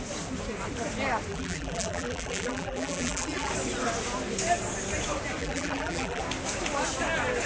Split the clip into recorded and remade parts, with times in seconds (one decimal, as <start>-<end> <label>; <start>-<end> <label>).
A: 0.0-1.3 recorded; 1.3-3.5 remade; 3.5-5.4 recorded; 5.4-6.2 remade; 6.2-7.5 recorded